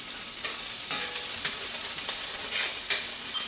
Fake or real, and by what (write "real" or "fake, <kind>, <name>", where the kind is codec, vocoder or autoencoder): real